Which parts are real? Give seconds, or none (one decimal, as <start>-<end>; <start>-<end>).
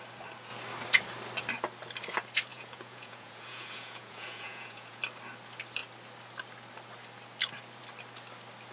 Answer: 0.0-2.5; 5.0-8.7